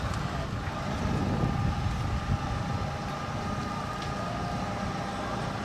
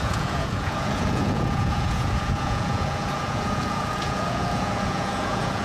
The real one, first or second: first